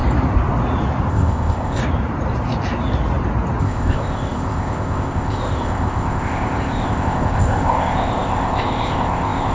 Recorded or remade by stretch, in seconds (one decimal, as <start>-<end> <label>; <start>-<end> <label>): 0.0-1.1 recorded; 1.1-1.8 remade; 1.8-3.6 recorded; 3.6-9.5 remade